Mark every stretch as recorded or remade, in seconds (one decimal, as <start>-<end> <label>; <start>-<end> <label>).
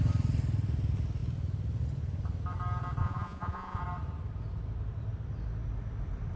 0.0-3.0 recorded; 3.0-3.8 remade; 3.8-6.4 recorded